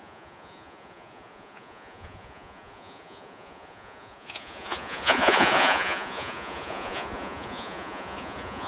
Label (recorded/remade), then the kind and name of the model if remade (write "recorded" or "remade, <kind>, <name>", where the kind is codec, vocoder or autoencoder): remade, vocoder, Vocos